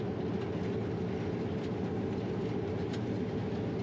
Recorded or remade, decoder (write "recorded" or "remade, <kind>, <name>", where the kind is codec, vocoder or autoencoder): recorded